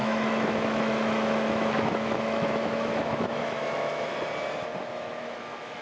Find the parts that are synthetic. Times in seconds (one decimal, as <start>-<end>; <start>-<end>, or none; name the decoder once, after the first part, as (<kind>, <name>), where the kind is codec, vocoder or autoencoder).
0.0-4.1 (autoencoder, DAC-VAE); 4.8-5.8